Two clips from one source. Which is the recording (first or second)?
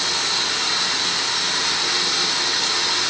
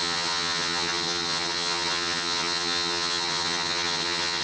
first